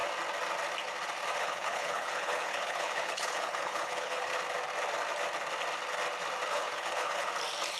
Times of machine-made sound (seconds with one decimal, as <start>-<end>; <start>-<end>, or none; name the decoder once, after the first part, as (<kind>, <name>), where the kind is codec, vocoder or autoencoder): 1.4-4.3 (codec, HILCodec); 6.5-7.3